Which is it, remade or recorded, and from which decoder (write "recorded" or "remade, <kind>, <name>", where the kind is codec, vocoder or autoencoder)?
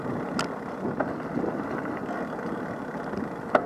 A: recorded